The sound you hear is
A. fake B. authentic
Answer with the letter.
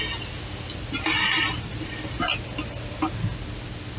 B